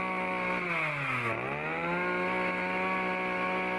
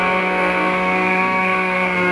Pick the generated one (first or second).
second